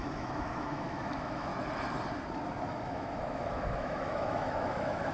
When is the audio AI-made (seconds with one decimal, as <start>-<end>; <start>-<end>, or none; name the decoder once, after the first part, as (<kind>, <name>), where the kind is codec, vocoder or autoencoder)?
0.0-1.5 (autoencoder, DAC-VAE); 2.7-5.1